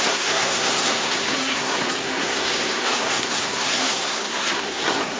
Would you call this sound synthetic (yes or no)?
yes